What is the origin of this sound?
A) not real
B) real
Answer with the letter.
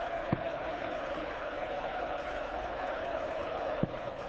A